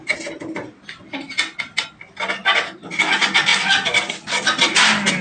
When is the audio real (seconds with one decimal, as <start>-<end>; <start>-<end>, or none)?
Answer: 0.0-5.2